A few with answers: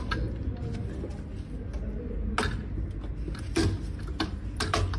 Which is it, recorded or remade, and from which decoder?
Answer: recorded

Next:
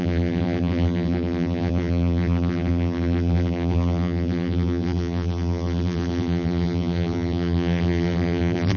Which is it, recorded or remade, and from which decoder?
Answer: remade, vocoder, BigVGAN v2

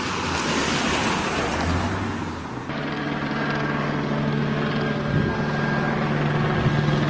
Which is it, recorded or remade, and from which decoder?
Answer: recorded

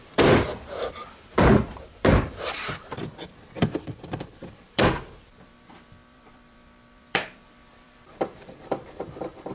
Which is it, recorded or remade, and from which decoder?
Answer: remade, vocoder, BigVGAN v2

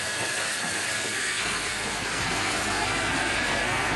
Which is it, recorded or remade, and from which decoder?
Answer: remade, codec, SNAC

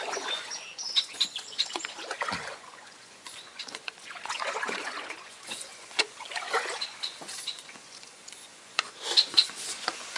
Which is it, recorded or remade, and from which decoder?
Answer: remade, vocoder, Vocos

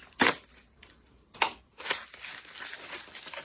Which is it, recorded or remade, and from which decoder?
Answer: remade, vocoder, BigVGAN v2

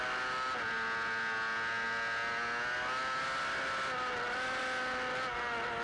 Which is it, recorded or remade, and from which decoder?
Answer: recorded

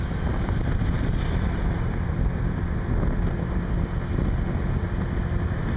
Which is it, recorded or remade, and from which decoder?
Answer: recorded